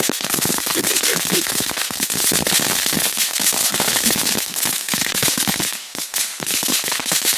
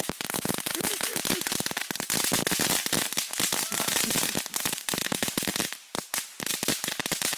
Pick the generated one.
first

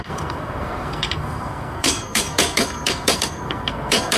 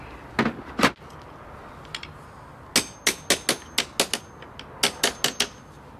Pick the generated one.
first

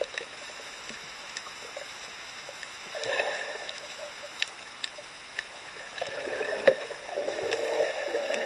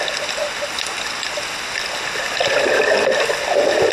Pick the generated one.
first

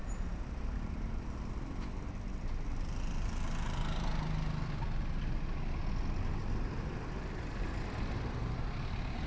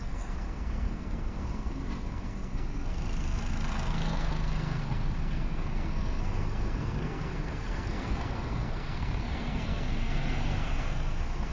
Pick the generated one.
second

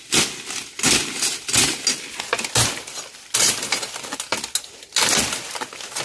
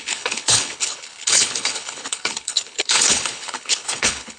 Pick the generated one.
second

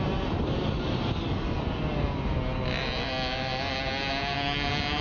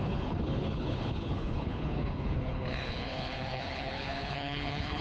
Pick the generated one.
second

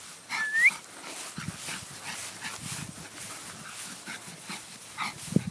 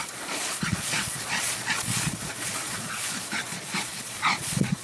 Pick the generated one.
second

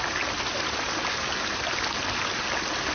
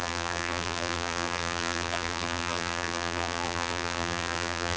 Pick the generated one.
second